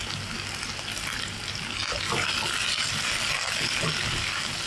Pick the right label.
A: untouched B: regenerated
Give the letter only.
A